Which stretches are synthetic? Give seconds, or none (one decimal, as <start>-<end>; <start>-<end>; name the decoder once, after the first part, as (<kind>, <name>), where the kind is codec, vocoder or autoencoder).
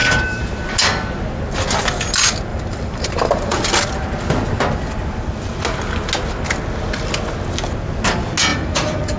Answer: 0.0-0.5 (vocoder, BigVGAN v2); 2.5-3.6; 8.5-9.2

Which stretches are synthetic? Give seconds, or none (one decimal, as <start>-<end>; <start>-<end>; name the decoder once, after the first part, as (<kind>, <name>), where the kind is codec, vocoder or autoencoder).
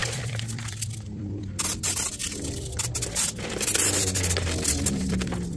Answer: 0.0-1.4 (vocoder, BigVGAN v2); 2.2-5.6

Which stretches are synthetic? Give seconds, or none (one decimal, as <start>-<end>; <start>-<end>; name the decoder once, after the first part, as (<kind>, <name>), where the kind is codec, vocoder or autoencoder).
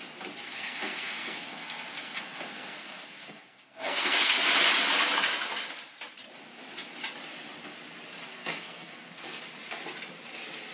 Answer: 0.4-4.4 (codec, SNAC); 8.3-9.4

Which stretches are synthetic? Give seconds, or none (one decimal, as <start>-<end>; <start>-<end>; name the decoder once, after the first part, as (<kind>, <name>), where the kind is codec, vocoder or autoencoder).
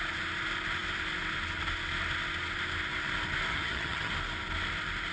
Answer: 3.5-4.1 (vocoder, HiFi-GAN)